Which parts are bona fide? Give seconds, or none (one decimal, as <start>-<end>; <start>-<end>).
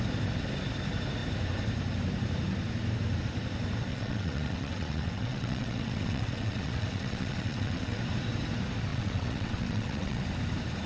0.0-3.9; 8.0-8.9; 10.2-10.9